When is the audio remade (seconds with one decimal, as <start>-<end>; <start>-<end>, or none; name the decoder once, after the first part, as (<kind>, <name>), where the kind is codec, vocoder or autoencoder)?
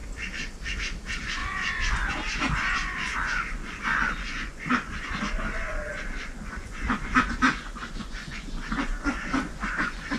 0.8-10.2 (vocoder, Vocos)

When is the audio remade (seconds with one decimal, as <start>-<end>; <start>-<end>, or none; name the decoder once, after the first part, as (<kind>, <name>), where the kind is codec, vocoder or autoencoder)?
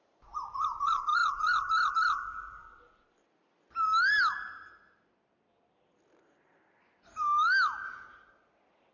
none